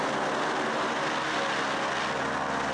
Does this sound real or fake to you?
real